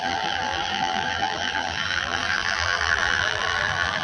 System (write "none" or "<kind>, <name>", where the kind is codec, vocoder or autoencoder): vocoder, BigVGAN v2